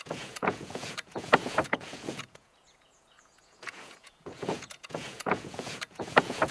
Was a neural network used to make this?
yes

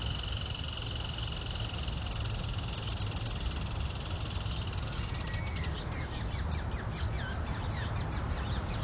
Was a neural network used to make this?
no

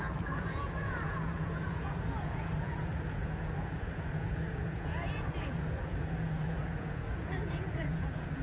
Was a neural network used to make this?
yes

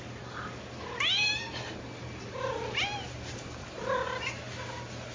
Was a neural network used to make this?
no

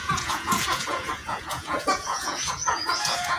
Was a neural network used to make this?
yes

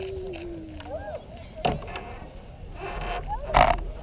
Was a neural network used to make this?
no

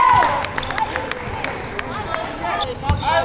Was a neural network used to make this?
no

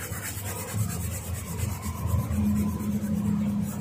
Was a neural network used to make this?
no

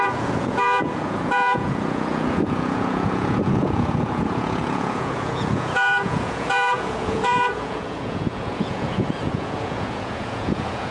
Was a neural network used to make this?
yes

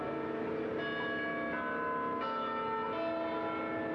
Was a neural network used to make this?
no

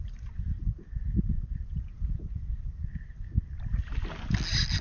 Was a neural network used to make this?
no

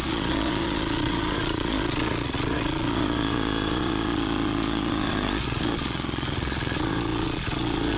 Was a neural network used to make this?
yes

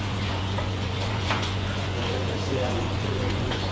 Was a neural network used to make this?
yes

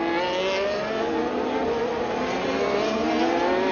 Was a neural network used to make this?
no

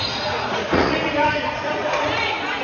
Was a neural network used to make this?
yes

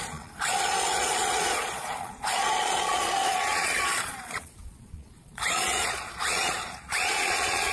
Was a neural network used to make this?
yes